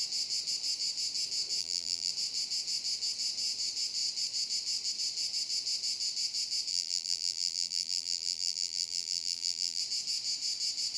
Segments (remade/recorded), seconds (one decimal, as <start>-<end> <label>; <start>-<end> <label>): 0.0-1.6 recorded; 1.6-2.1 remade; 2.1-6.7 recorded; 6.7-9.8 remade; 9.8-11.0 recorded